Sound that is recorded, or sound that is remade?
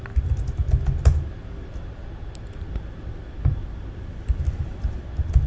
recorded